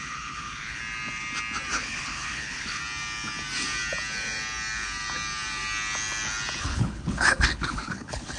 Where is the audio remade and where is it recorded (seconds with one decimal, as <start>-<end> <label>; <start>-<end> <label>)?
0.0-0.8 remade; 0.8-1.7 recorded; 1.7-2.8 remade; 2.8-6.6 recorded; 6.6-8.4 remade